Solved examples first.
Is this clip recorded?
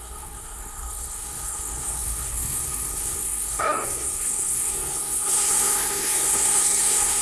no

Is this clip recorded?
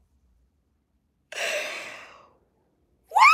no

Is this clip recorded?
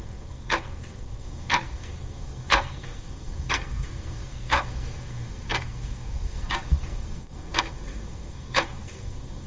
no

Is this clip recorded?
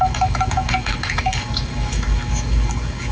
no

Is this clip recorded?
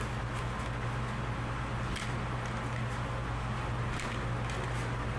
yes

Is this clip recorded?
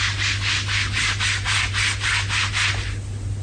yes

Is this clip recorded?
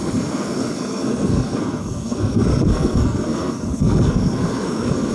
no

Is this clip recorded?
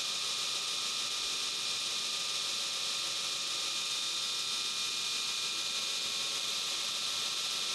yes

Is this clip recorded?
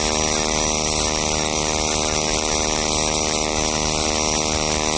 yes